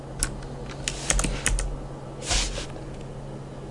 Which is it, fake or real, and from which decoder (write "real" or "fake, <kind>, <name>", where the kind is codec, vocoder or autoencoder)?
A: real